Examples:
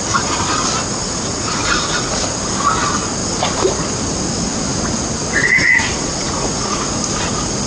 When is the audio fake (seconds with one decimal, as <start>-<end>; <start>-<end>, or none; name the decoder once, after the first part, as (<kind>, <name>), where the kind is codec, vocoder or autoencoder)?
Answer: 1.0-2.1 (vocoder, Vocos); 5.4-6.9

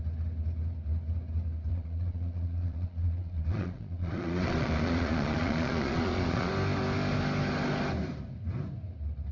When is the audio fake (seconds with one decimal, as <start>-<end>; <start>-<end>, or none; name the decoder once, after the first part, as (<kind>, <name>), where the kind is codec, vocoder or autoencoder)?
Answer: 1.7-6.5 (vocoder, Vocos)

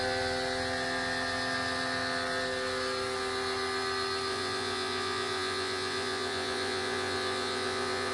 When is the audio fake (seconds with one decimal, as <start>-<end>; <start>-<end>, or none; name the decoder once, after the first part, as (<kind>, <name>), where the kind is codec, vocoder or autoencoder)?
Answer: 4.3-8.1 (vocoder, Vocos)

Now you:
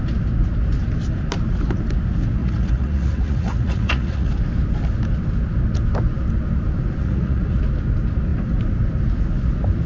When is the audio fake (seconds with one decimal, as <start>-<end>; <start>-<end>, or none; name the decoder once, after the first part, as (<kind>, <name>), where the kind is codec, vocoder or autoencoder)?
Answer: 2.4-4.3 (vocoder, Vocos); 7.0-7.6

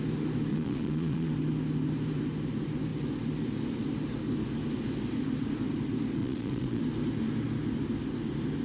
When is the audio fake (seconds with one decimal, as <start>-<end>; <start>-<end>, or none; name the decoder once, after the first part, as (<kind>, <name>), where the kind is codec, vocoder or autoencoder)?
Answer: 0.5-1.3 (vocoder, Vocos); 6.2-6.8